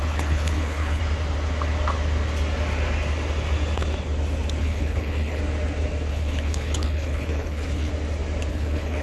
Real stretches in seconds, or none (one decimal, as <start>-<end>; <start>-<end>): 1.0-4.6; 5.4-6.1; 7.9-8.5